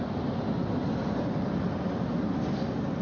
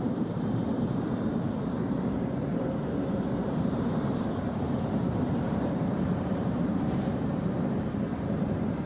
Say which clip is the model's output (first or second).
second